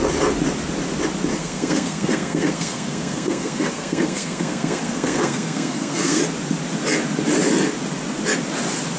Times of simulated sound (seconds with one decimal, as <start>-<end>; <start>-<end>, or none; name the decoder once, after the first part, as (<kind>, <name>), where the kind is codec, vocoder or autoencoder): 1.3-6.2 (codec, SNAC)